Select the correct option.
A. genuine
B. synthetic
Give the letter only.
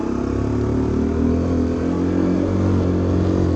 A